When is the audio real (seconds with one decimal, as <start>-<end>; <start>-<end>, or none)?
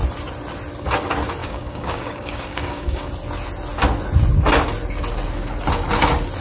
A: 0.0-1.4; 3.1-6.4